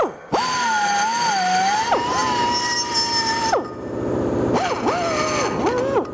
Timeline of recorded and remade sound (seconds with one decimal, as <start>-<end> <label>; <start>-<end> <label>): 0.0-6.1 recorded